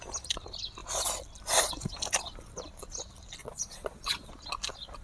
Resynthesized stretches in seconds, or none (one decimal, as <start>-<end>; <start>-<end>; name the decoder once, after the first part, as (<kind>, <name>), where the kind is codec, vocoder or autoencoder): 3.4-4.3 (vocoder, Vocos)